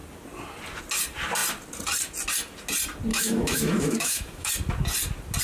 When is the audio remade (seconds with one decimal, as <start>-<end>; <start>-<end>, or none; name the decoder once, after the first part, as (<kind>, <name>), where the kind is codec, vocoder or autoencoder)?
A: 3.1-4.5 (autoencoder, DAC-VAE)